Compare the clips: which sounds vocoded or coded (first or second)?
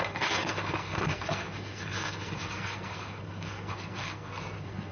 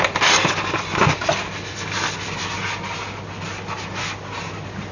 first